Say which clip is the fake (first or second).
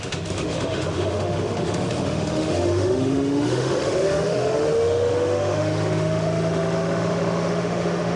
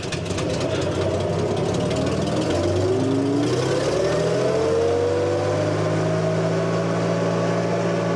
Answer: first